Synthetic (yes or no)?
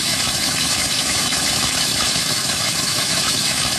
yes